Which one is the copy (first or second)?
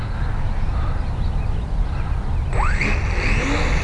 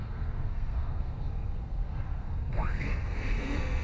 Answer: second